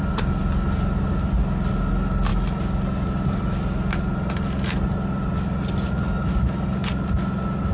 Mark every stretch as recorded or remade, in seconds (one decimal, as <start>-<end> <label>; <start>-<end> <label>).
0.0-7.7 recorded